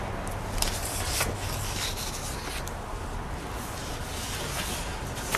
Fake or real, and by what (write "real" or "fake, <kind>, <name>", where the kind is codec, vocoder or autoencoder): real